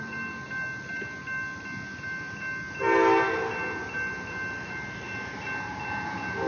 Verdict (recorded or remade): recorded